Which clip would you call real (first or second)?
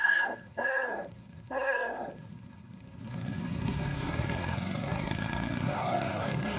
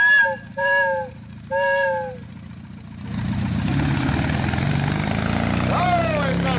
second